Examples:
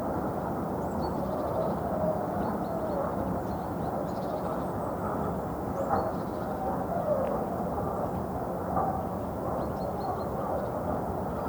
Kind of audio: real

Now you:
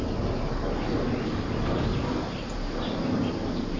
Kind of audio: real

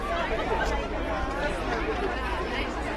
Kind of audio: real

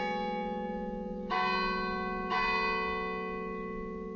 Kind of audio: real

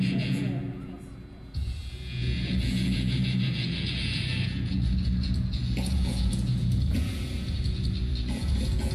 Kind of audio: fake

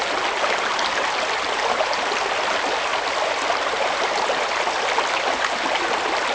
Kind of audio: real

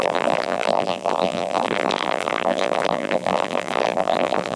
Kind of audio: fake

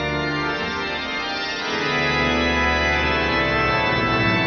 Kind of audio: real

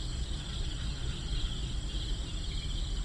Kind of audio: real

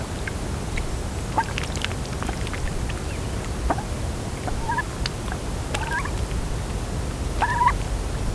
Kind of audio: real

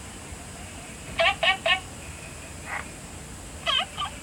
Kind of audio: real